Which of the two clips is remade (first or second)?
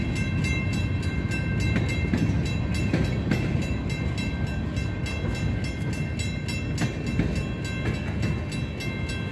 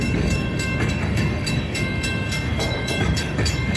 second